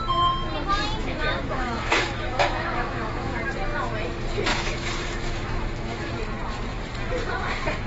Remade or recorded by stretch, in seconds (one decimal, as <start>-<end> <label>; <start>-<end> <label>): 0.0-1.0 recorded; 1.0-3.4 remade; 3.4-4.5 recorded; 4.5-6.1 remade; 6.1-7.9 recorded